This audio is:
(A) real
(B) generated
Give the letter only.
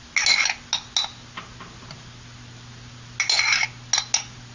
A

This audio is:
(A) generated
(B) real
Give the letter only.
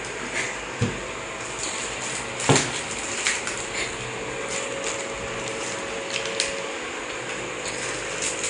B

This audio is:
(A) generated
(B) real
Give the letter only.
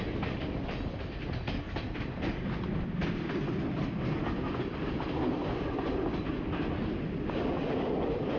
B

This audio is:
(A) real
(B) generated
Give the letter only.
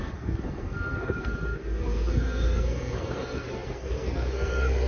B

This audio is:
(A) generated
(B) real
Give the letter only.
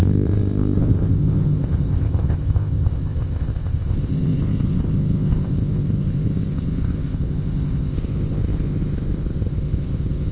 A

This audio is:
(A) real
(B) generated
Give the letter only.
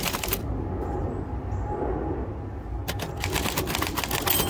A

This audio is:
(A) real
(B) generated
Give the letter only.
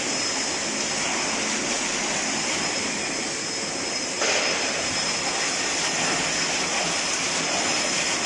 A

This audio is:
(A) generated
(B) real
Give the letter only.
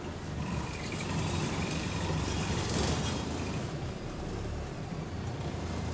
A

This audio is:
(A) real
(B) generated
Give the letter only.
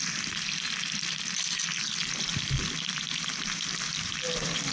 A